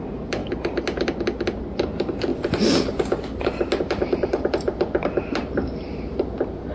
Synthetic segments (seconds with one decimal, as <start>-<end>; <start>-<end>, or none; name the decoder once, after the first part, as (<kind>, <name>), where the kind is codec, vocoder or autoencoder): 0.0-0.4 (vocoder, BigVGAN v2); 1.6-2.3; 3.8-6.7